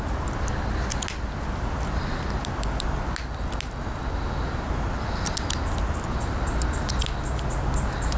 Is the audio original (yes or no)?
yes